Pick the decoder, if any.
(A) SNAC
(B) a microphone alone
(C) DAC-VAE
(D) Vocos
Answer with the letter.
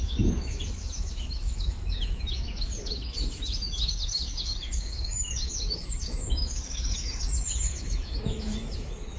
C